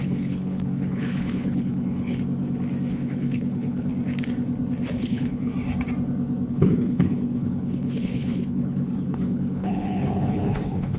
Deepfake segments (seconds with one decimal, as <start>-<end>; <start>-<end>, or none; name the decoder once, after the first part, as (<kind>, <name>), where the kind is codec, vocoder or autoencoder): 0.0-2.2 (codec, HILCodec); 2.9-3.9; 5.0-5.5; 6.5-11.0